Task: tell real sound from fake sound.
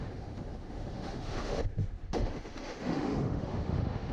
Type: fake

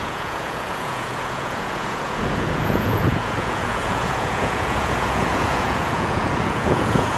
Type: fake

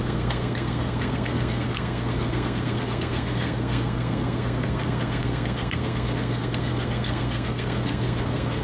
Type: fake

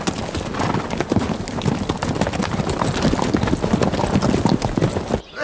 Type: real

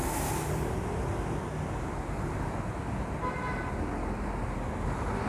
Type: real